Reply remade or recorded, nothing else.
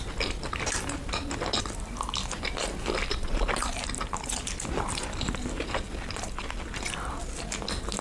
recorded